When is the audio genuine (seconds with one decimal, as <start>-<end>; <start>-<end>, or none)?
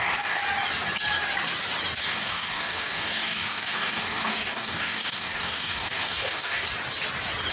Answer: 0.4-2.0; 6.6-7.5